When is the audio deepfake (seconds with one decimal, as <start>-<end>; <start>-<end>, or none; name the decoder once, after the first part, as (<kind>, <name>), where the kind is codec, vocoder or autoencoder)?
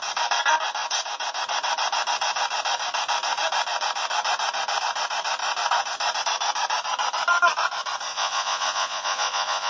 8.1-9.7 (vocoder, Vocos)